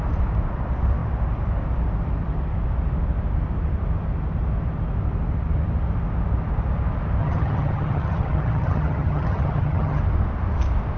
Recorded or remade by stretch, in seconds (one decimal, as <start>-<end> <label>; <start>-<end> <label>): 0.0-7.2 recorded; 7.2-10.0 remade; 10.0-11.0 recorded